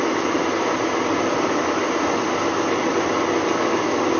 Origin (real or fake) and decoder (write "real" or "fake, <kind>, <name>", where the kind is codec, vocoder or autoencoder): real